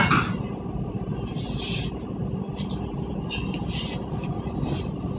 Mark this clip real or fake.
real